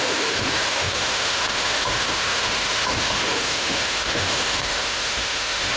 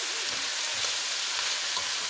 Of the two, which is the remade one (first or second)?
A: first